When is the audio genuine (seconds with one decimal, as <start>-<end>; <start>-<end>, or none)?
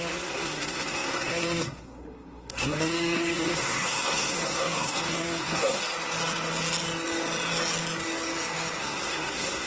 5.8-8.8